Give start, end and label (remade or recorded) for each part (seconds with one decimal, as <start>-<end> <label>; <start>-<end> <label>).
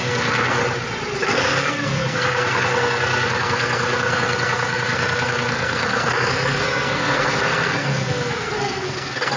0.0-0.6 remade; 0.6-1.2 recorded; 1.2-9.4 remade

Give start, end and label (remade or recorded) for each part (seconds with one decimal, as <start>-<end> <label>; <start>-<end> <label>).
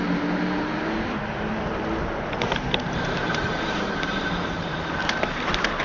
0.0-2.0 recorded; 2.0-5.8 remade